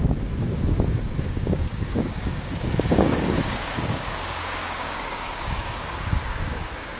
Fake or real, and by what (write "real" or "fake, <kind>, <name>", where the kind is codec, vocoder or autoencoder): fake, codec, DAC